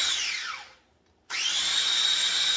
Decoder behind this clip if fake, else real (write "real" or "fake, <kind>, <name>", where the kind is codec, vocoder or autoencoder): real